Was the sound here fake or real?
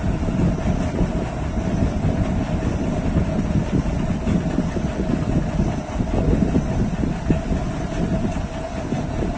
real